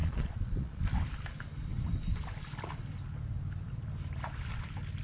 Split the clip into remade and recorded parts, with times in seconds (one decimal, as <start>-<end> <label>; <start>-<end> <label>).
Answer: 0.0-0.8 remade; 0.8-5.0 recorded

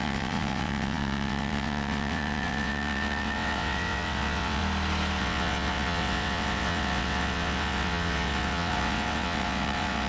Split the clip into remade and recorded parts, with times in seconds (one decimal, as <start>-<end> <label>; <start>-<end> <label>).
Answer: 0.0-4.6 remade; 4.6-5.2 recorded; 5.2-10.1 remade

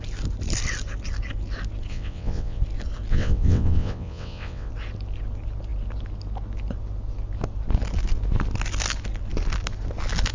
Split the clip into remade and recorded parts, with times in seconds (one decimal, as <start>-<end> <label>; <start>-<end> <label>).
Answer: 0.0-1.9 recorded; 1.9-2.6 remade; 2.6-3.1 recorded; 3.1-4.7 remade; 4.7-10.3 recorded